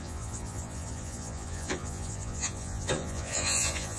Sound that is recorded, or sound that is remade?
remade